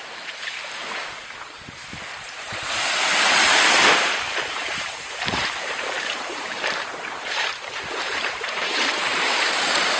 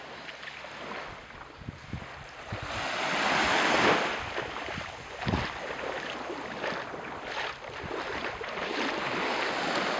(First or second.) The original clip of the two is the second